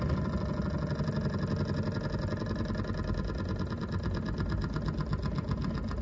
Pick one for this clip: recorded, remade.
recorded